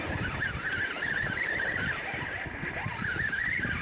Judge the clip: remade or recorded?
remade